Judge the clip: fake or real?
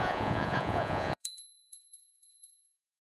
fake